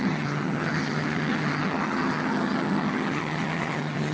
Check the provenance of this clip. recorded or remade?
remade